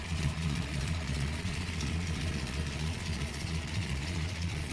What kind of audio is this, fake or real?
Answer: fake